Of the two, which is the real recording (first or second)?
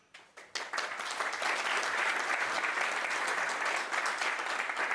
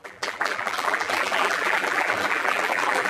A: first